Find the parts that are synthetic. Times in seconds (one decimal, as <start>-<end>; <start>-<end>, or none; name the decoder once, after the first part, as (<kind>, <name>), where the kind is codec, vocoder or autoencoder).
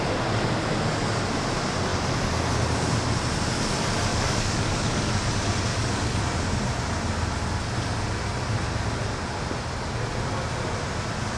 4.1-5.3 (codec, DAC); 5.7-6.2